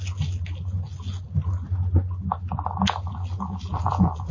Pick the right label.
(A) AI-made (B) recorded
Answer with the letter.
B